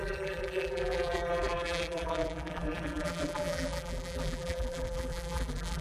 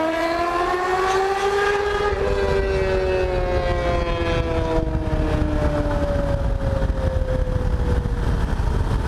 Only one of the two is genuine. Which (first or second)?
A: second